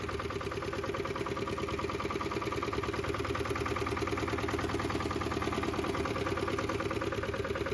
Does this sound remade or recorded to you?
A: recorded